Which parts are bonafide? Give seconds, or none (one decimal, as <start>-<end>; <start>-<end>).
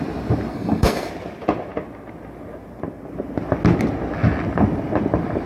0.0-0.5; 1.1-5.5